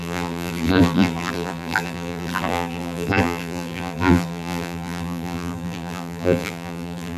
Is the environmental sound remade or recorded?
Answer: remade